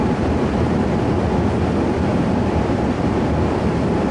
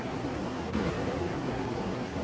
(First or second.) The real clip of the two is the first